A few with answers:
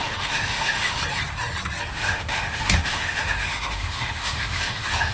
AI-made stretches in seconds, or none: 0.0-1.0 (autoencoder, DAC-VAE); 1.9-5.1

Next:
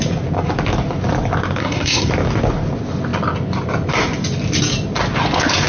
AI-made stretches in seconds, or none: 1.6-2.1 (codec, SNAC)

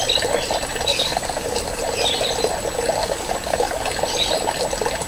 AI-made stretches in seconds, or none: 0.9-1.8 (codec, DAC); 3.0-3.9

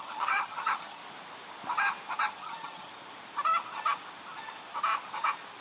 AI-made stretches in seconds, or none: 0.0-1.0 (vocoder, HiFi-GAN); 2.3-2.9